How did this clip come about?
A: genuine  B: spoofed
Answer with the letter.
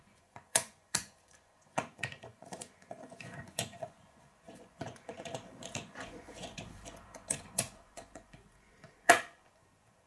B